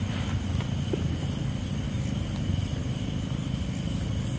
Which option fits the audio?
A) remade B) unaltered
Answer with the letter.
B